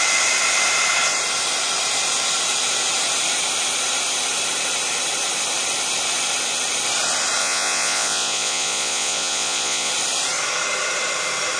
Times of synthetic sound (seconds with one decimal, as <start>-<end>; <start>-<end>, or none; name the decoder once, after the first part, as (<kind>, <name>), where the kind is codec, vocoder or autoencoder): 7.4-9.9 (vocoder, Vocos)